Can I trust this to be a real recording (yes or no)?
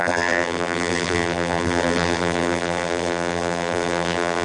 no